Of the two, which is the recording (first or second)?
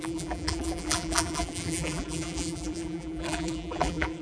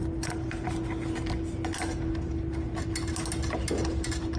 second